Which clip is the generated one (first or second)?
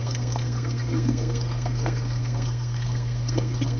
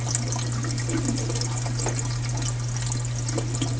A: first